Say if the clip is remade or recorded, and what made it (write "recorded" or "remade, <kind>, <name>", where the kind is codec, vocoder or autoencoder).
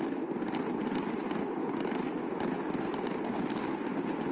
recorded